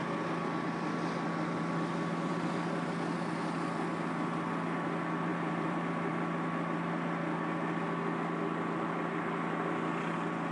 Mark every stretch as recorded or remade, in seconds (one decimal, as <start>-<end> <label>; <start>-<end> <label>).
0.0-5.3 recorded; 5.3-6.1 remade; 6.1-10.5 recorded